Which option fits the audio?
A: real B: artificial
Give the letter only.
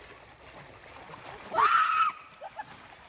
A